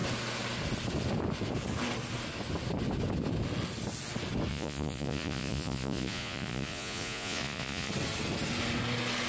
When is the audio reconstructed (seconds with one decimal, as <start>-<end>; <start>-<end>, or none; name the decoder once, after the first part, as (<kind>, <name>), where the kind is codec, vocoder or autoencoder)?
4.5-7.9 (vocoder, Vocos)